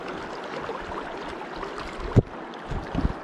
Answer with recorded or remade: recorded